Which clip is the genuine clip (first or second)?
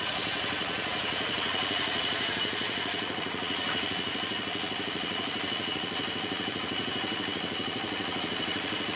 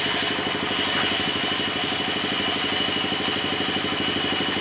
second